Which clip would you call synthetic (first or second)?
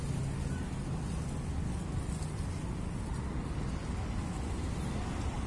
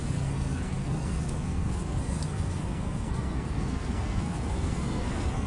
second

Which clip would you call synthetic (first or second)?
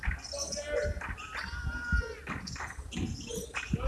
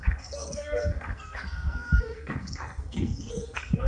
second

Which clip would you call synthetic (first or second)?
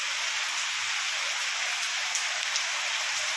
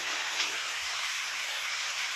second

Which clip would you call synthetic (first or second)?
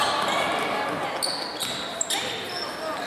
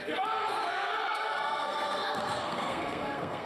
second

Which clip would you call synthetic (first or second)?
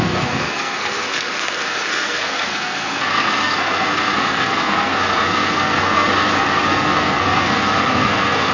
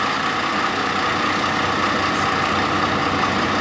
first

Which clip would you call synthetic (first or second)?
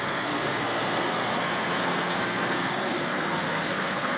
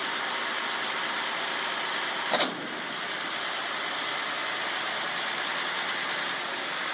first